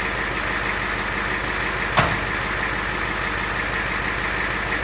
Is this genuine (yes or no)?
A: yes